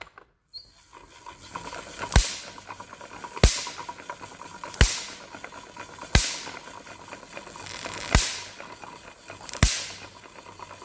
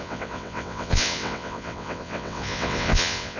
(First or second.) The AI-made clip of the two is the second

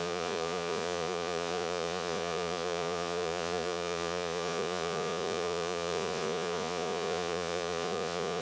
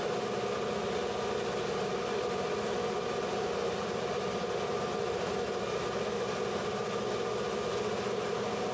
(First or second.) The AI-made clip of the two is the first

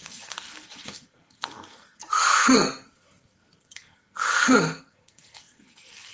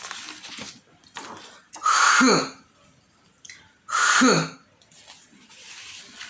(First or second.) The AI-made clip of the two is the first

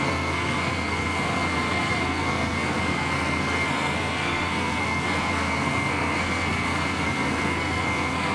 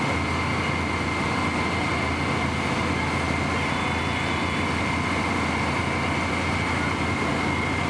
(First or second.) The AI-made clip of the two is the first